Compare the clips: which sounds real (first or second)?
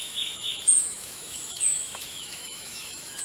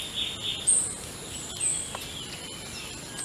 second